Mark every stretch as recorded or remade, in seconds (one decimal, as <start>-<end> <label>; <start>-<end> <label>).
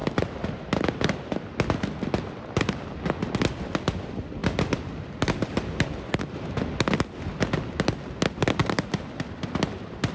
0.0-1.4 remade; 1.4-4.4 recorded; 4.4-5.9 remade; 5.9-8.6 recorded; 8.6-9.1 remade; 9.1-10.1 recorded